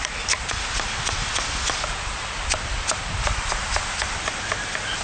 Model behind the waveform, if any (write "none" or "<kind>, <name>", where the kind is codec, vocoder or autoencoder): none